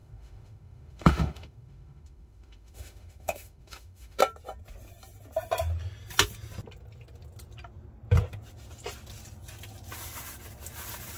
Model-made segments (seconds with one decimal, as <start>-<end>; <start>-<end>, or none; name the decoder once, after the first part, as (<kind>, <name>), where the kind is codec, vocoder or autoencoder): 0.0-4.2 (autoencoder, DAC-VAE)